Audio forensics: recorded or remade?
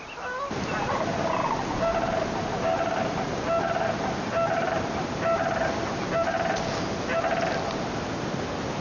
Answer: recorded